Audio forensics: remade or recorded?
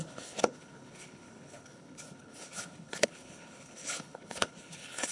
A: remade